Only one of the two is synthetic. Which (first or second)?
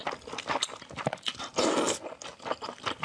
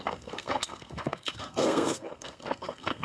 second